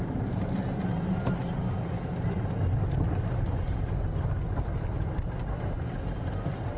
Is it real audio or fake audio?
real